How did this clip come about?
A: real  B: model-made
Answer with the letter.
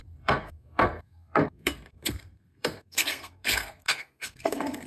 B